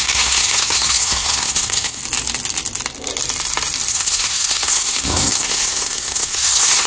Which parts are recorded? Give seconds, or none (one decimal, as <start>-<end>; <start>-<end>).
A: 2.0-3.9